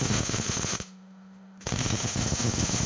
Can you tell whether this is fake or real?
fake